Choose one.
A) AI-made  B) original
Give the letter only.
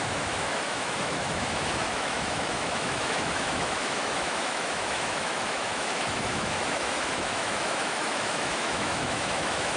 A